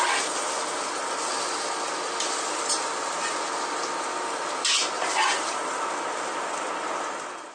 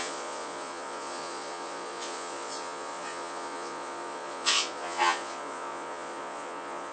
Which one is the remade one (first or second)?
second